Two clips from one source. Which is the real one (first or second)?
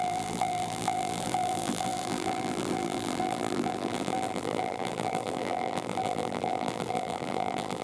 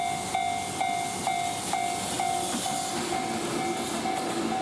second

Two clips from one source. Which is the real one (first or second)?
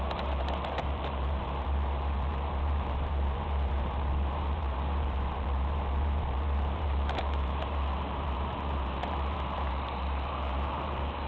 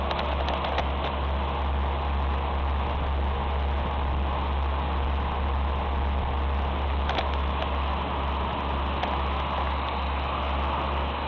second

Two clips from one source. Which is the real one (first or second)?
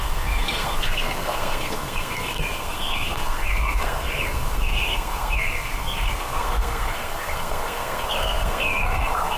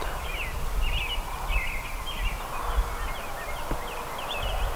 second